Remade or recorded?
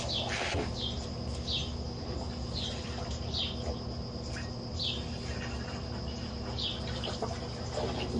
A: recorded